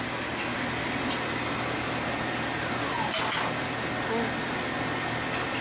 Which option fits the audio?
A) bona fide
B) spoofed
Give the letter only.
A